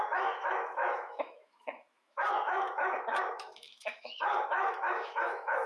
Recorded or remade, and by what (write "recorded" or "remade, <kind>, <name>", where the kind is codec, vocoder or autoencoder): remade, autoencoder, DAC-VAE